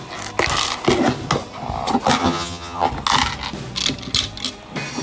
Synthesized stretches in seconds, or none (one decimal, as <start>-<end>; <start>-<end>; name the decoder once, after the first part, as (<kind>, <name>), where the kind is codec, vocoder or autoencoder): 2.2-2.9 (vocoder, HiFi-GAN)